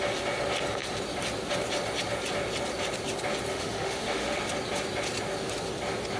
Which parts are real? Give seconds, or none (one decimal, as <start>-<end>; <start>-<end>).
0.0-3.5; 4.4-6.2